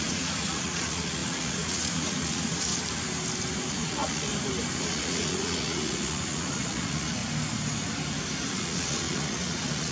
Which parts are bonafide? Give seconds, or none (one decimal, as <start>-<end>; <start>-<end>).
2.7-3.7; 4.3-4.8; 7.2-8.5